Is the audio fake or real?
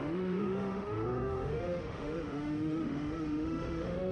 fake